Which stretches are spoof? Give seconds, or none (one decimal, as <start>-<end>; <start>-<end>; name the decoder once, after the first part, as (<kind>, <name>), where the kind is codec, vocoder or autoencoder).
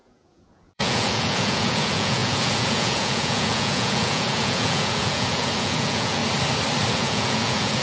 0.0-6.2 (vocoder, Vocos); 6.9-7.8